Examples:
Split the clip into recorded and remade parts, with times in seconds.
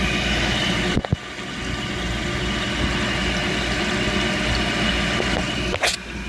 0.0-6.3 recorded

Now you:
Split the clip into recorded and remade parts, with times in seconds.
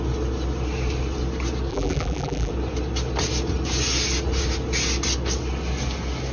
0.0-1.7 recorded; 1.7-2.5 remade; 2.5-6.3 recorded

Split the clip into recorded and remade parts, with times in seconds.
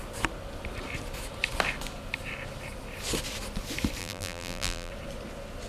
0.0-4.0 recorded; 4.0-4.9 remade; 4.9-5.7 recorded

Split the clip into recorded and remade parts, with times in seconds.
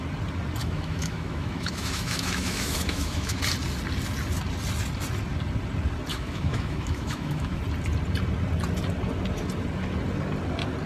0.0-0.6 recorded; 0.6-3.4 remade; 3.4-6.1 recorded; 6.1-7.6 remade; 7.6-10.9 recorded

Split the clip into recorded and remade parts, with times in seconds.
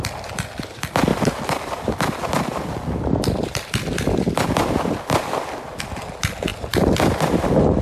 0.0-1.1 recorded; 1.1-5.8 remade; 5.8-6.5 recorded; 6.5-7.8 remade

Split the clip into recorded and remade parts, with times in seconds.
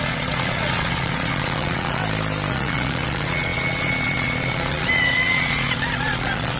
0.0-2.0 remade; 2.0-2.5 recorded; 2.5-6.6 remade